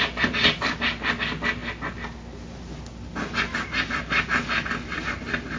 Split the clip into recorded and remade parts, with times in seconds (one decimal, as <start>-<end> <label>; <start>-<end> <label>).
0.0-5.6 recorded